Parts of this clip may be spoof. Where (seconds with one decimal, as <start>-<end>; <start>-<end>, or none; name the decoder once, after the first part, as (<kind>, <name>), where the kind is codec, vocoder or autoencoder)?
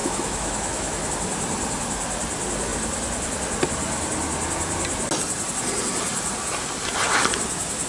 0.0-1.1 (autoencoder, DAC-VAE)